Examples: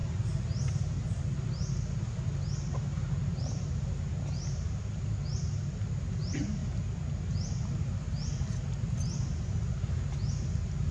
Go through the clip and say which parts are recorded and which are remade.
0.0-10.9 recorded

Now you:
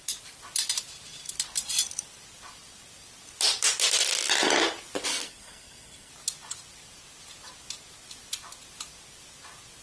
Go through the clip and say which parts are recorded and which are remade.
0.0-5.1 recorded; 5.1-6.1 remade; 6.1-9.8 recorded

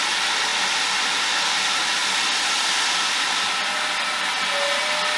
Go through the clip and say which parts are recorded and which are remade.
0.0-5.2 recorded

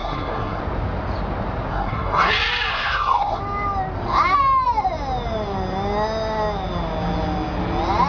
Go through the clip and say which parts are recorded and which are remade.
0.0-0.6 remade; 0.6-1.7 recorded; 1.7-2.3 remade; 2.3-2.7 recorded; 2.7-3.4 remade; 3.4-8.1 recorded

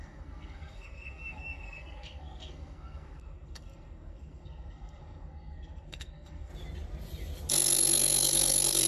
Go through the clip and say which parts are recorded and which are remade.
0.0-6.5 remade; 6.5-7.5 recorded; 7.5-8.9 remade